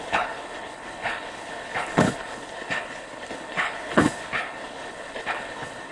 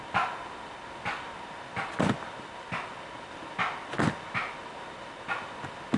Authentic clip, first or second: second